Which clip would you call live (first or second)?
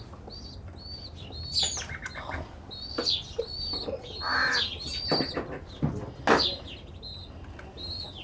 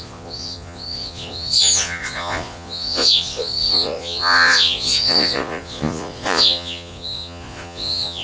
first